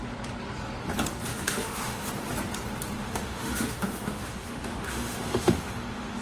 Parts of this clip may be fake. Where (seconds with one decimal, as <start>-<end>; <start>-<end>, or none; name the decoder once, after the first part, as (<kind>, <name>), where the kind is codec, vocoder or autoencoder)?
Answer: 1.3-2.1 (autoencoder, DAC-VAE); 3.0-6.2